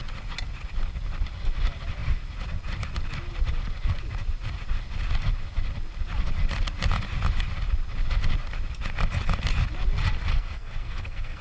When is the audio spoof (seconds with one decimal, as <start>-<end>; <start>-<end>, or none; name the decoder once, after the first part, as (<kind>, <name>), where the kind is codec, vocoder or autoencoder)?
10.3-11.4 (codec, SNAC)